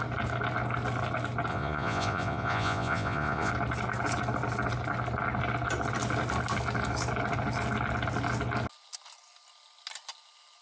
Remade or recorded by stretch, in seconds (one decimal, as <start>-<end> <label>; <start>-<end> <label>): 0.0-1.5 recorded; 1.5-3.5 remade; 3.5-10.6 recorded